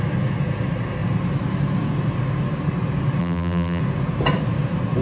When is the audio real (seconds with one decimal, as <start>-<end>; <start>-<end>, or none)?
0.0-3.2; 3.8-5.0